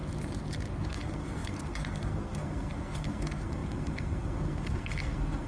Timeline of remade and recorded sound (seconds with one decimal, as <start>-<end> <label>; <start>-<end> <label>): 0.0-0.9 recorded; 0.9-5.5 remade